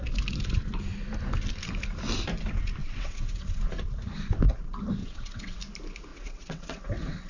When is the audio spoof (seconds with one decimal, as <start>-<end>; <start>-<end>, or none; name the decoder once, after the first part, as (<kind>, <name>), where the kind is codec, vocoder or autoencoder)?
2.8-3.6 (vocoder, WaveNeXt); 5.0-5.6; 6.1-7.3